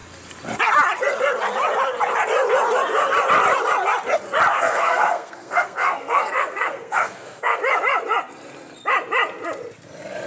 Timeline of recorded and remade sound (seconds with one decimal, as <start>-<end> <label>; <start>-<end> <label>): 0.0-4.5 recorded; 4.5-7.6 remade; 7.6-10.3 recorded